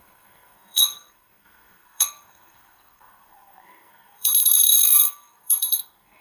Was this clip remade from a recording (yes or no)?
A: yes